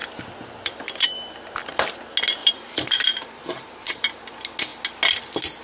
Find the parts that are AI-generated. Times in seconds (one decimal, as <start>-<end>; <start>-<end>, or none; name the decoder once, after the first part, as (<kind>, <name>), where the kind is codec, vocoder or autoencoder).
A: 2.4-4.2 (vocoder, BigVGAN v2)